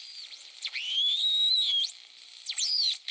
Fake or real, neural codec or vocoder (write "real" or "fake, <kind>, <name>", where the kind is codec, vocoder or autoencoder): real